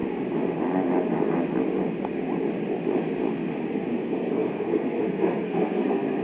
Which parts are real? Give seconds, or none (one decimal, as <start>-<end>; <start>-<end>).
0.0-3.7